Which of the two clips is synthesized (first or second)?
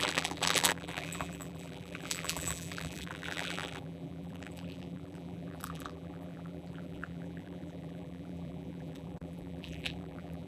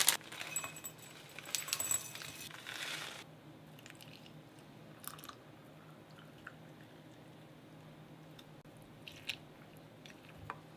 first